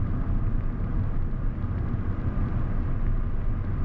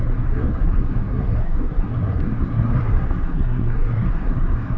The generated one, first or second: second